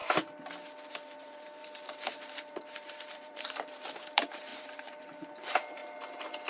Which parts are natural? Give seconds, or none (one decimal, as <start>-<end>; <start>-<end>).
0.0-0.9; 5.8-6.5